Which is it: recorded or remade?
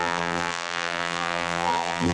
remade